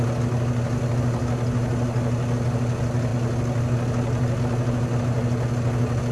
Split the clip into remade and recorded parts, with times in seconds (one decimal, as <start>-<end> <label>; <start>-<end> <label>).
0.0-6.1 recorded